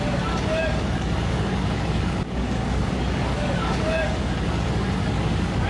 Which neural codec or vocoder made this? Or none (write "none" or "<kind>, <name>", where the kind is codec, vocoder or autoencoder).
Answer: codec, DAC